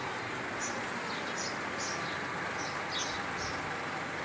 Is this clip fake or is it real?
real